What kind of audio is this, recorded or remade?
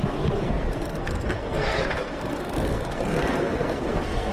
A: remade